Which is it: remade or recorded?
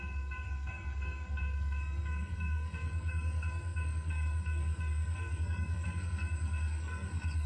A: remade